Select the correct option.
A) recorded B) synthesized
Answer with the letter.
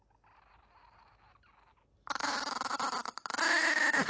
A